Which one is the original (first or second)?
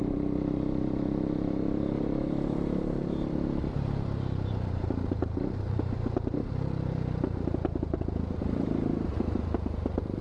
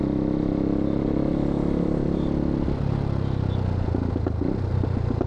second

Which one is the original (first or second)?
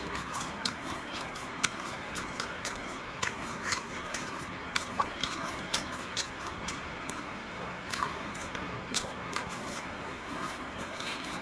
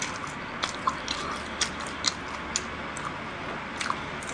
second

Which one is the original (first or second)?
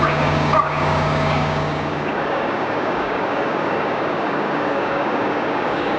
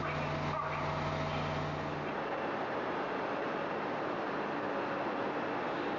second